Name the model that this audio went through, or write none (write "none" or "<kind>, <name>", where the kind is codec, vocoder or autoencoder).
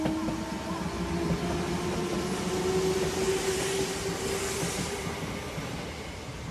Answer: none